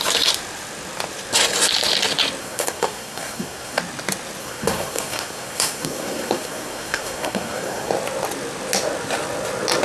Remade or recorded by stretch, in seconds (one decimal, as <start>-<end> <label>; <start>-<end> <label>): 0.0-2.4 recorded; 2.4-3.8 remade; 3.8-4.4 recorded; 4.4-7.9 remade; 7.9-9.8 recorded